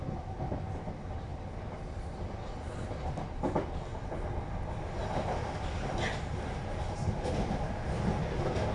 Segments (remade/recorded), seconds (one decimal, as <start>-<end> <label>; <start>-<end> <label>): 0.0-8.7 recorded